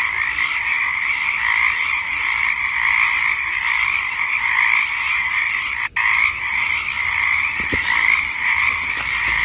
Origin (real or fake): real